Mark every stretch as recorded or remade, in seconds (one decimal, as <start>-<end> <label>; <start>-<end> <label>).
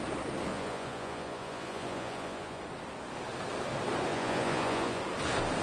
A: 0.0-0.5 recorded; 0.5-2.6 remade; 2.6-4.1 recorded; 4.1-5.0 remade; 5.0-5.6 recorded